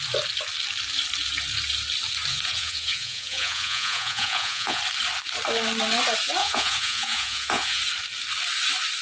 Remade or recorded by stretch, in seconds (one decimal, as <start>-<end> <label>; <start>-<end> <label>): 0.0-2.3 recorded; 2.3-4.8 remade; 4.8-6.4 recorded; 6.4-7.8 remade; 7.8-9.0 recorded